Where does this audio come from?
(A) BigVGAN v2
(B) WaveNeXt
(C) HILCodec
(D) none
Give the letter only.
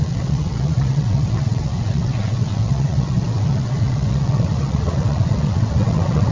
B